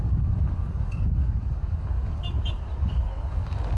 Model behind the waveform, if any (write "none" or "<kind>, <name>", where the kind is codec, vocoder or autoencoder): codec, DAC